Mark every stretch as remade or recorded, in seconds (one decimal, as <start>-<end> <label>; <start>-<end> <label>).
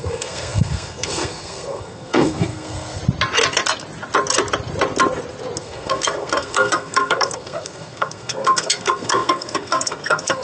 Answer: 0.0-3.0 remade; 3.0-5.6 recorded; 5.6-10.4 remade